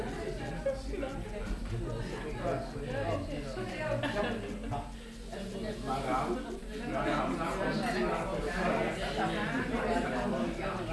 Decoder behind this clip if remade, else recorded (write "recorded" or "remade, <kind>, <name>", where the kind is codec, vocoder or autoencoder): recorded